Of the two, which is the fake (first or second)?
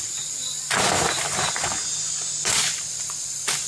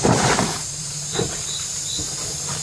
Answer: second